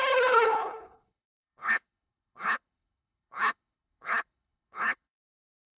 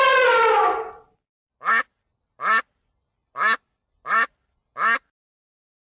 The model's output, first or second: first